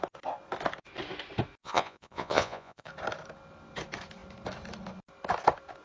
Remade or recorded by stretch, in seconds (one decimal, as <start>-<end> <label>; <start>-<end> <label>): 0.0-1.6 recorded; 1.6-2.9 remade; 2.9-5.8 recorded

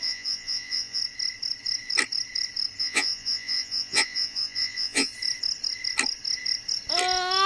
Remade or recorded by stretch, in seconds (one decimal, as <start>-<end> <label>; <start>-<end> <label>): 0.0-1.0 remade; 1.0-2.8 recorded; 2.8-5.1 remade; 5.1-7.5 recorded

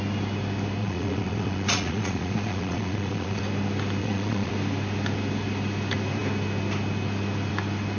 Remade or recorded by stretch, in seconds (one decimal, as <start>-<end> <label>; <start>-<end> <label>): 0.0-0.8 recorded; 0.8-3.4 remade; 3.4-4.0 recorded; 4.0-4.5 remade; 4.5-8.0 recorded